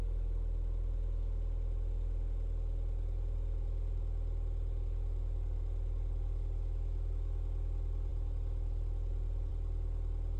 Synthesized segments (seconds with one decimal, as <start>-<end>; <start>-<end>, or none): none